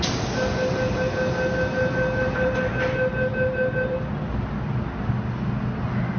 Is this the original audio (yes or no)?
yes